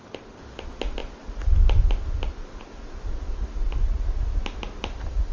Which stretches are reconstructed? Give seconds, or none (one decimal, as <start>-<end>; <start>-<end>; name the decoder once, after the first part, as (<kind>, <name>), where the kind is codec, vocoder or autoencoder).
none